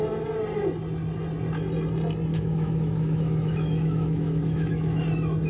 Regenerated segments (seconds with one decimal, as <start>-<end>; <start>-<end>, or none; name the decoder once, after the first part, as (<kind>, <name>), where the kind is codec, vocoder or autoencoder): 2.3-5.0 (autoencoder, DAC-VAE)